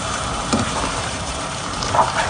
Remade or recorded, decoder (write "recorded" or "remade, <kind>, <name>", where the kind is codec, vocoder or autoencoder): remade, vocoder, BigVGAN v2